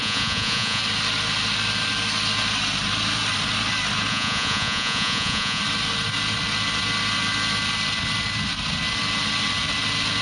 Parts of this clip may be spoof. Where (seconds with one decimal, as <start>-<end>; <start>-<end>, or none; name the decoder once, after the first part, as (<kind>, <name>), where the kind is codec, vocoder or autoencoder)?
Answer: 0.0-0.8 (vocoder, Vocos); 4.1-5.6